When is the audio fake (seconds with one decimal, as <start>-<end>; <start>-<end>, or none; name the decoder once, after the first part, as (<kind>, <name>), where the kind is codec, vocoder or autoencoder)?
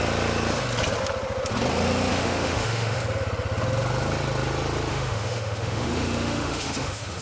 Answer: 2.1-3.0 (autoencoder, DAC-VAE); 4.9-7.2